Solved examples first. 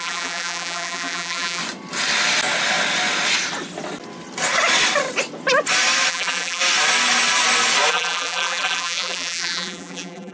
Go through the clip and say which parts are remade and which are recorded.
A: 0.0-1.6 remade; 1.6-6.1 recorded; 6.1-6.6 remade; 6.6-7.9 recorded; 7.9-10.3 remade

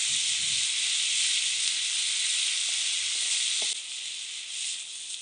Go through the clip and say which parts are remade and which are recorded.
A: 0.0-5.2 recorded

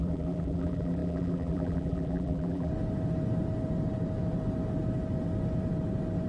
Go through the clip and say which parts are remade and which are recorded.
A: 0.0-2.7 remade; 2.7-6.3 recorded

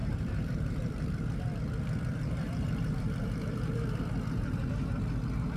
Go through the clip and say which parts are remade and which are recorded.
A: 0.0-1.6 remade; 1.6-2.1 recorded; 2.1-5.6 remade

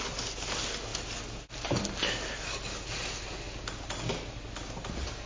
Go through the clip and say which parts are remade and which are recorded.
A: 0.0-5.3 recorded

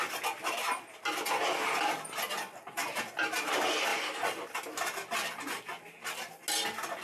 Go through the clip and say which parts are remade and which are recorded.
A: 0.0-3.9 recorded; 3.9-4.5 remade; 4.5-7.0 recorded